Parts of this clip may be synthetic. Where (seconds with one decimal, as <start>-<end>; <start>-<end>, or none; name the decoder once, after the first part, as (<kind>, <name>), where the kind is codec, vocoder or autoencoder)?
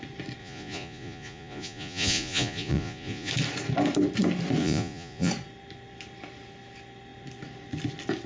0.4-3.3 (vocoder, Vocos); 4.6-5.3